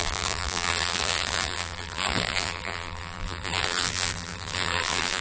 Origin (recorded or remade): remade